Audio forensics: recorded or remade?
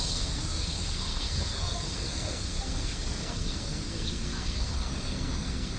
remade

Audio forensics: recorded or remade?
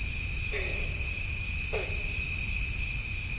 recorded